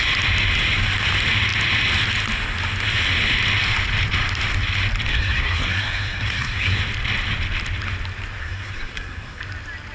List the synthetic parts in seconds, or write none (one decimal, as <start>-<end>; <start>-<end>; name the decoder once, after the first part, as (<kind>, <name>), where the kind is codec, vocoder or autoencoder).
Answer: 5.1-6.8 (codec, SNAC); 8.4-9.4